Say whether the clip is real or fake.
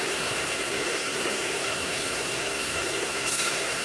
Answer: fake